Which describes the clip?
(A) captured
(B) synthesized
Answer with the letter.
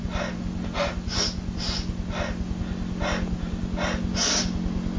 A